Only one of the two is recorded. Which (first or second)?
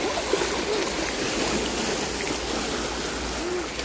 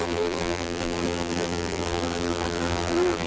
first